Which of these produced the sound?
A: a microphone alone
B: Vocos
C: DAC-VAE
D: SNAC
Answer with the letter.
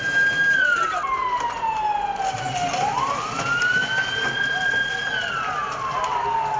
A